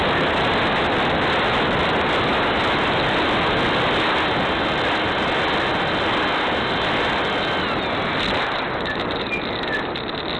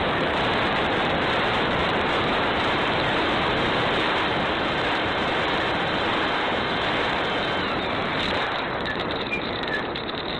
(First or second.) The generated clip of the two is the second